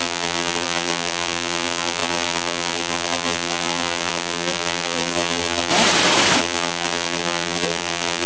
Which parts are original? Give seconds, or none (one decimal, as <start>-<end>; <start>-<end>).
5.7-6.4